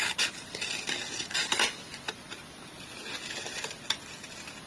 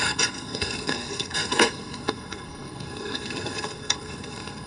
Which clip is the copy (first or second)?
second